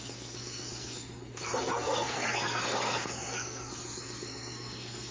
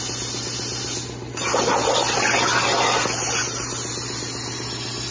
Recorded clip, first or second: second